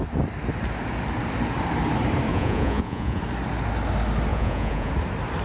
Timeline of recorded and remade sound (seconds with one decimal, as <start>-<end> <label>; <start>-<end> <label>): 0.0-2.3 recorded; 2.3-3.2 remade; 3.2-4.3 recorded; 4.3-4.9 remade; 4.9-5.4 recorded